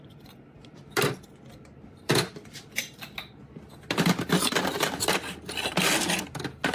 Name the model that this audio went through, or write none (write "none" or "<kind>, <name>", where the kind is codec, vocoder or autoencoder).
none